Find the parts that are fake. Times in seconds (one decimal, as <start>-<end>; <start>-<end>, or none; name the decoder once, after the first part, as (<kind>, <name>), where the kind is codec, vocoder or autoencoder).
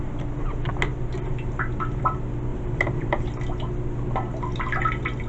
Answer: 2.5-3.2 (vocoder, BigVGAN v2)